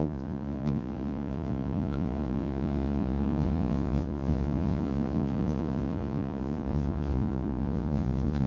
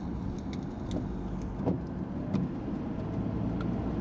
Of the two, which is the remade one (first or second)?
first